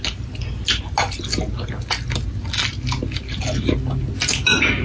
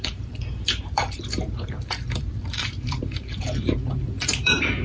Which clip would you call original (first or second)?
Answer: first